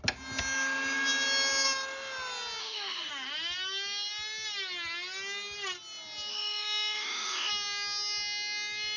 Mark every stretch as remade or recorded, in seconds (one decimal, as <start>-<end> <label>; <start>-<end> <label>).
0.0-2.6 recorded; 2.6-3.1 remade; 3.1-6.3 recorded; 6.3-7.5 remade; 7.5-9.0 recorded